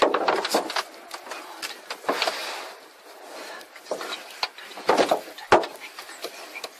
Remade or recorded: recorded